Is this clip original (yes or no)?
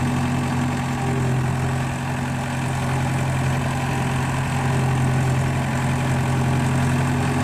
yes